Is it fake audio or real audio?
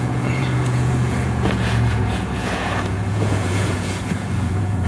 fake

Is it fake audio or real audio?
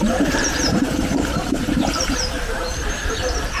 fake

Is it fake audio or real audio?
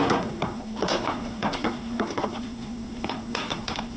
fake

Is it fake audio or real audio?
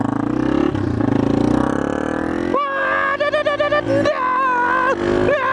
real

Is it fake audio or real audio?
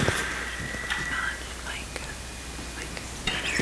real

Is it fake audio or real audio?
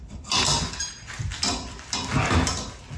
real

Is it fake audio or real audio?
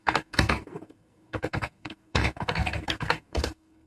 fake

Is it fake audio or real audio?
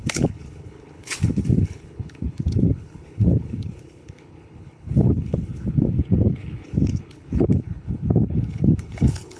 fake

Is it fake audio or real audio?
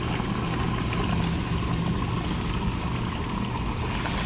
real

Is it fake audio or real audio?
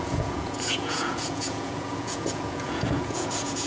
fake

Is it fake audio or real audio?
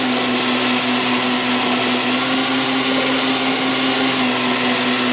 real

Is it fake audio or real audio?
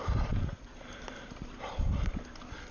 fake